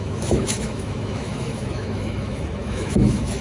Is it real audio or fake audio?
fake